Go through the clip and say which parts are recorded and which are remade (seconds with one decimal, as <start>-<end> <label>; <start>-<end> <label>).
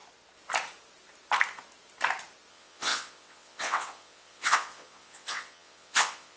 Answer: 0.0-2.5 recorded; 2.5-6.4 remade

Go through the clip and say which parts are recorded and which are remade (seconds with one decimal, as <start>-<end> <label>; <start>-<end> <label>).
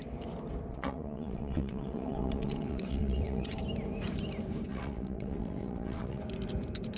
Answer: 0.0-0.7 recorded; 0.7-3.6 remade; 3.6-4.7 recorded; 4.7-6.2 remade; 6.2-7.0 recorded